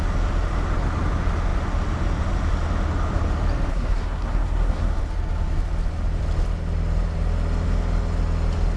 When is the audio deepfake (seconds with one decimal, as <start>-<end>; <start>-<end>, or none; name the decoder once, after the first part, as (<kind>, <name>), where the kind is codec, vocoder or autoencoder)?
3.7-4.9 (codec, SNAC)